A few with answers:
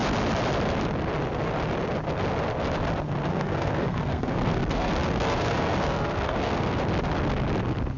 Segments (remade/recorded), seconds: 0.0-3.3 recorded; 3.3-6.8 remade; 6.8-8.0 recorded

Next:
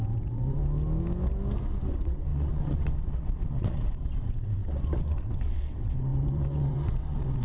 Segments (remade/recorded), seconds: 0.0-0.6 remade; 0.6-1.7 recorded; 1.7-7.4 remade

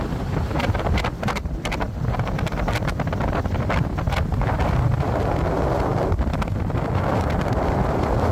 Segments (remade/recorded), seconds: 0.0-8.3 recorded

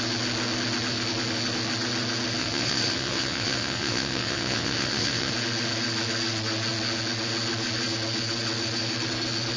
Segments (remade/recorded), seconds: 0.0-2.4 recorded; 2.4-5.3 remade; 5.3-9.6 recorded